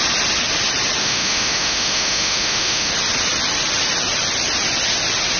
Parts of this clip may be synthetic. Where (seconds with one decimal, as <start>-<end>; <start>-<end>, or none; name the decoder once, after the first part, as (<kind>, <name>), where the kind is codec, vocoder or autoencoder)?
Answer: 1.0-2.9 (autoencoder, DAC-VAE)

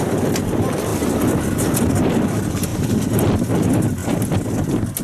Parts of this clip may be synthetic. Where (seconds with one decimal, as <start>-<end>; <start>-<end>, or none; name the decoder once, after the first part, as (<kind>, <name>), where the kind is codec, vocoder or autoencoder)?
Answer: none

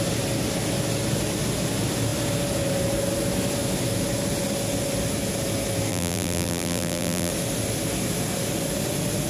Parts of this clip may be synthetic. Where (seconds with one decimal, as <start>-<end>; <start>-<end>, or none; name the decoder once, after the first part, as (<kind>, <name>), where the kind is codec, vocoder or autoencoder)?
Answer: 5.9-7.3 (vocoder, BigVGAN v2)

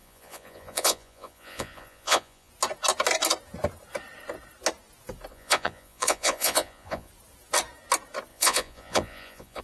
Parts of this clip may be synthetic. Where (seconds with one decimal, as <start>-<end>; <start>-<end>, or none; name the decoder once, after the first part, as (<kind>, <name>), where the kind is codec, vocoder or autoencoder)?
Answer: 0.0-2.5 (vocoder, Vocos); 5.3-7.1; 8.3-9.6

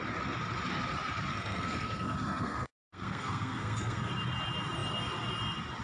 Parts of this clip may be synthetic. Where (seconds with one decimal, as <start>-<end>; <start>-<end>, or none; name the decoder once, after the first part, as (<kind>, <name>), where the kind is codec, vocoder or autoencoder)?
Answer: 1.3-4.1 (codec, SNAC)

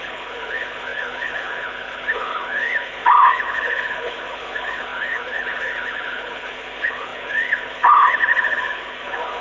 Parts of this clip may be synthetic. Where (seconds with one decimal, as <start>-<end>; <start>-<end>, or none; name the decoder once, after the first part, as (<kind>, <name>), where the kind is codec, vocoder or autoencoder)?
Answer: 0.0-9.4 (codec, HILCodec)

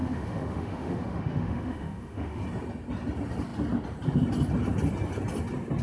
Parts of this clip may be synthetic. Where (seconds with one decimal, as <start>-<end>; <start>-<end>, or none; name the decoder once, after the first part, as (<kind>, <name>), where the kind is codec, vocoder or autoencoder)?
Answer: 0.0-2.4 (autoencoder, DAC-VAE)